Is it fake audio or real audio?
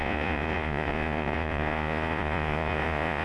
fake